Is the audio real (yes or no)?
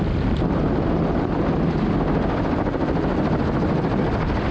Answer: yes